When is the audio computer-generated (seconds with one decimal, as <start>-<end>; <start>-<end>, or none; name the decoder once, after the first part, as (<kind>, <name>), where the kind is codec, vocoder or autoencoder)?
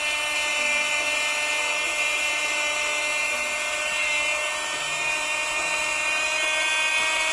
none